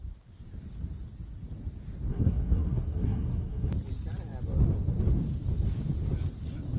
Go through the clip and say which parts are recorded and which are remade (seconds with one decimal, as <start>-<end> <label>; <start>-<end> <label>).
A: 0.0-2.1 recorded; 2.1-3.7 remade; 3.7-6.8 recorded